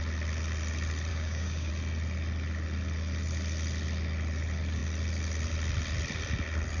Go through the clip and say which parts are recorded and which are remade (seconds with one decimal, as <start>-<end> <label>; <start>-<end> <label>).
0.0-1.1 recorded; 1.1-1.7 remade; 1.7-6.8 recorded